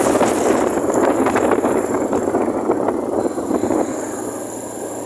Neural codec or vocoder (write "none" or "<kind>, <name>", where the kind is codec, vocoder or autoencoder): none